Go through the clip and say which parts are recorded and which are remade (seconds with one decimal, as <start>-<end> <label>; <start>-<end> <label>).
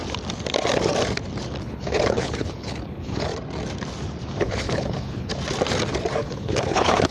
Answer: 0.0-1.6 recorded; 1.6-3.3 remade; 3.3-4.4 recorded; 4.4-5.3 remade; 5.3-6.2 recorded; 6.2-7.1 remade